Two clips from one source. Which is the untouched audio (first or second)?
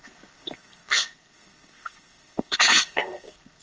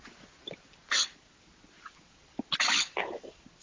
second